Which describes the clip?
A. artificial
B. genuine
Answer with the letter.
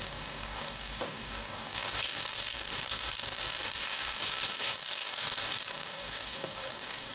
A